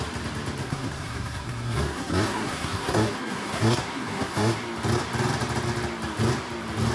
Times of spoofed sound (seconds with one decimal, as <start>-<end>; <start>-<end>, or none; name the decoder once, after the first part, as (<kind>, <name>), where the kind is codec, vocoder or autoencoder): 0.6-4.6 (codec, SNAC)